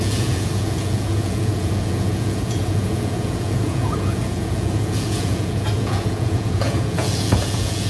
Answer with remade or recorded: remade